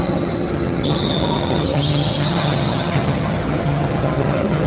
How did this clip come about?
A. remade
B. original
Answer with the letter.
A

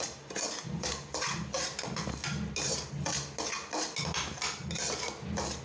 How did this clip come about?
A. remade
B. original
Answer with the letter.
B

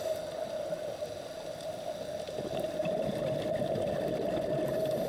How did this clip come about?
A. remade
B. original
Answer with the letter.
B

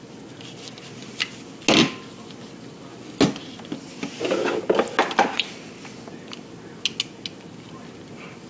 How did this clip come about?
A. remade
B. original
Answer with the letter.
B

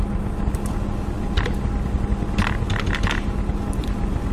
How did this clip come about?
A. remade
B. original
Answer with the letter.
B